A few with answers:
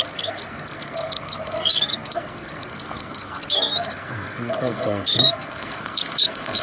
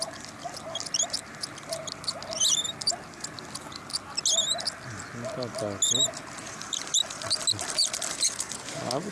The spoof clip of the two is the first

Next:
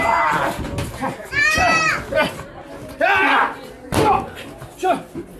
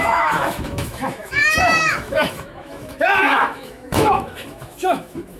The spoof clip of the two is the second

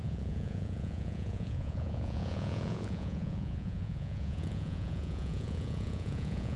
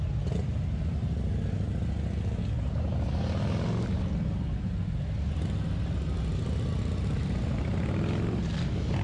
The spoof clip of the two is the first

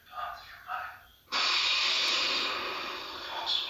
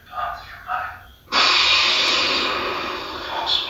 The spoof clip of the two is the first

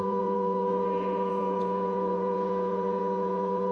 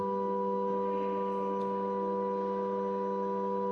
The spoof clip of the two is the first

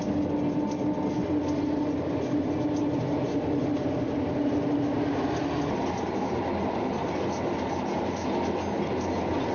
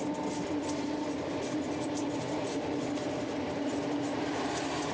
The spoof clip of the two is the second